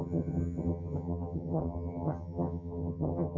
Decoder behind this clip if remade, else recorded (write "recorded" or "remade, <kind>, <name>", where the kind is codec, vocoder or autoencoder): remade, vocoder, HiFi-GAN